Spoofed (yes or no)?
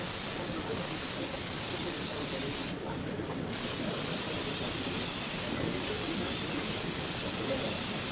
no